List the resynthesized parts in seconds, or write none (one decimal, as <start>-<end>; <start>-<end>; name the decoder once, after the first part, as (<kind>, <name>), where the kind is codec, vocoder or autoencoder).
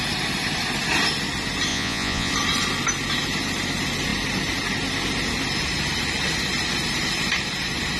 1.7-2.3 (vocoder, Vocos)